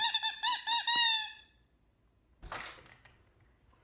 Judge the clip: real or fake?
real